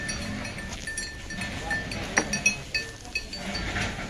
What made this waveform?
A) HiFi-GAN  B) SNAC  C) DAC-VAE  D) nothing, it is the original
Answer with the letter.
D